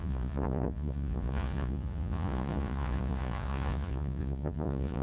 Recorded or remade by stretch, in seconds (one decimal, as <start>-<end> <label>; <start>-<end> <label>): 0.0-5.0 remade